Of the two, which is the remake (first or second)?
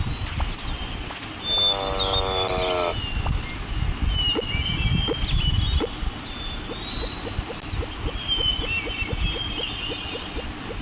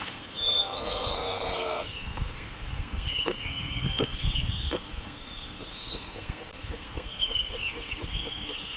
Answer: second